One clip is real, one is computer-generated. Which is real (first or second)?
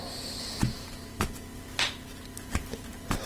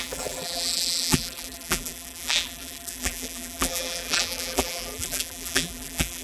first